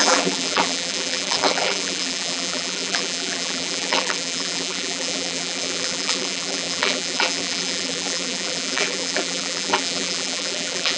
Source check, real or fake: fake